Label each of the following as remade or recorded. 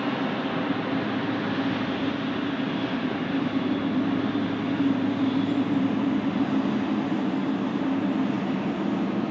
recorded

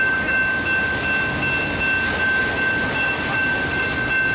recorded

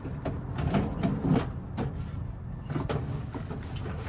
recorded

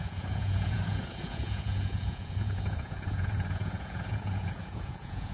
remade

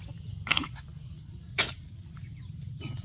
recorded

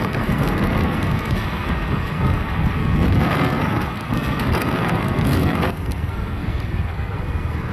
remade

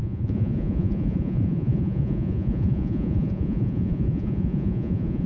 remade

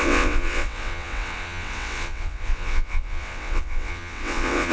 remade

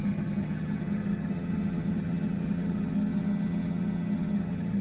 remade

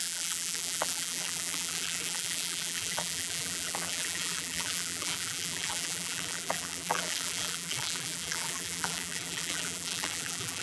remade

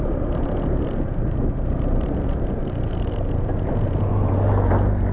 recorded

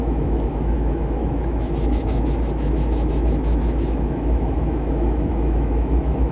remade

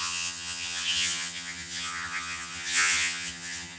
remade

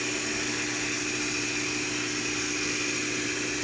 recorded